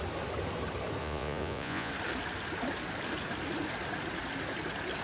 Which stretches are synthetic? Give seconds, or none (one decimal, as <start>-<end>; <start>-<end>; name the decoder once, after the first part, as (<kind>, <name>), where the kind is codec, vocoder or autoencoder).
1.0-1.9 (vocoder, Vocos)